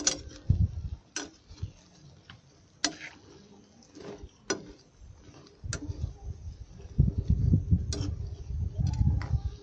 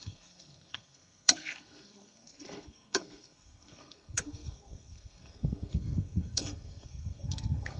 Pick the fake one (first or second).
second